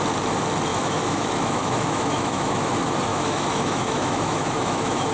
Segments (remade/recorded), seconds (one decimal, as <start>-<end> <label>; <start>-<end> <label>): 0.0-0.7 recorded; 0.7-2.7 remade; 2.7-3.1 recorded; 3.1-5.1 remade